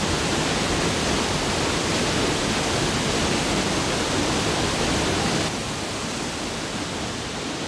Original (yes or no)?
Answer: yes